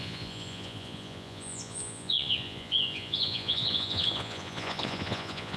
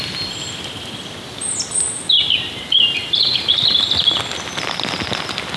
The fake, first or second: first